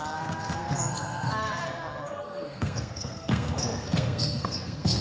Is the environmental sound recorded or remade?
remade